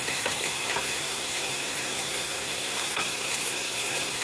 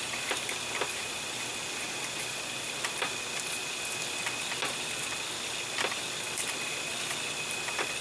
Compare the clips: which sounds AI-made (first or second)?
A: first